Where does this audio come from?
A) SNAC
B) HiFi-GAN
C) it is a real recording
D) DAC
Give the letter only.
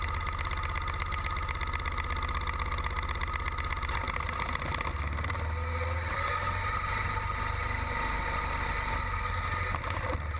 C